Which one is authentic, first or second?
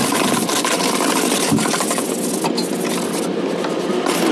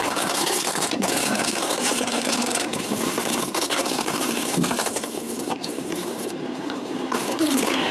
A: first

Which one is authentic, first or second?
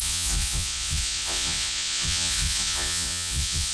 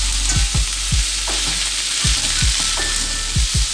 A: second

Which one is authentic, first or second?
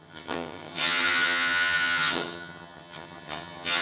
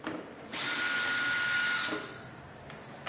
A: second